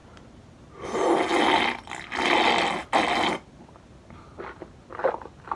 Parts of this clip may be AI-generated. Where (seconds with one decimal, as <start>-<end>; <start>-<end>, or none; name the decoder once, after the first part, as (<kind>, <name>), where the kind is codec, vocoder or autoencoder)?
none